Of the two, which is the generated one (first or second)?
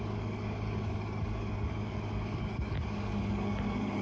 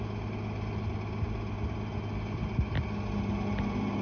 first